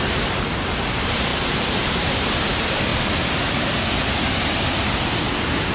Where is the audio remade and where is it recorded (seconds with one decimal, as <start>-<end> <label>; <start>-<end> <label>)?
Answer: 0.0-2.9 remade; 2.9-5.2 recorded; 5.2-5.7 remade